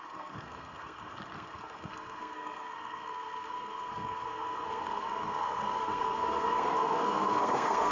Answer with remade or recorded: remade